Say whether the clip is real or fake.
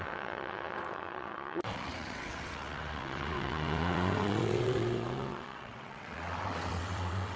fake